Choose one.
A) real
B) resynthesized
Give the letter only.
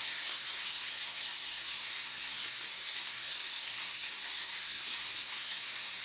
B